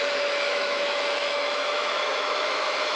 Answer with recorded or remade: remade